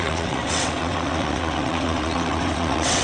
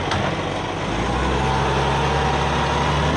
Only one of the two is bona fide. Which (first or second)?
second